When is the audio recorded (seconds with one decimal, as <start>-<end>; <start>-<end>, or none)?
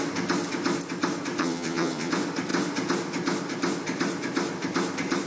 0.0-1.4; 2.1-5.3